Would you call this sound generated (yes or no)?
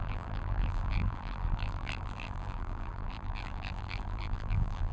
yes